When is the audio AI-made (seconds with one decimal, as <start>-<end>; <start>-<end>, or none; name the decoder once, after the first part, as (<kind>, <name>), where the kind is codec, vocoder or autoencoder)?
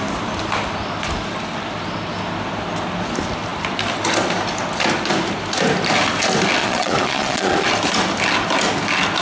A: 6.6-7.7 (vocoder, Vocos)